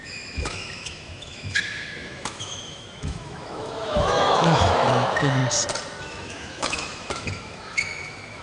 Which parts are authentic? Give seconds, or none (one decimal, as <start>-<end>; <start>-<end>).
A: 5.4-6.0